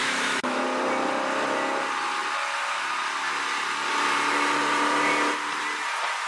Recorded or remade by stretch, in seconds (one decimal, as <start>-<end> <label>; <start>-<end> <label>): 0.0-0.6 remade; 0.6-6.3 recorded